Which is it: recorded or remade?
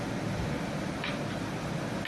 recorded